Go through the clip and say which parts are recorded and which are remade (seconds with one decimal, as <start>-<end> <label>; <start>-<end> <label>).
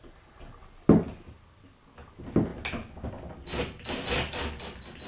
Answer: 0.0-5.1 recorded